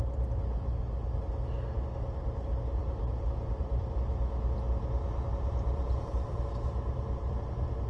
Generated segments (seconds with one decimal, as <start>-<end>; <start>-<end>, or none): 2.8-3.6; 5.3-7.9